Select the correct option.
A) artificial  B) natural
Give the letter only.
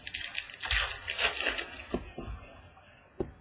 B